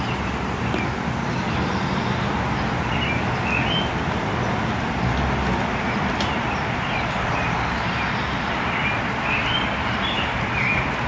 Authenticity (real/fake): real